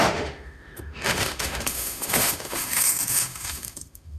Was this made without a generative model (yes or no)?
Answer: no